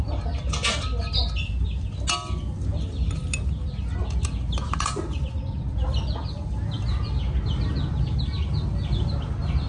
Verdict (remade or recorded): recorded